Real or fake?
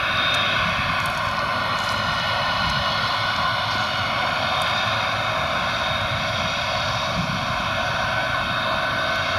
real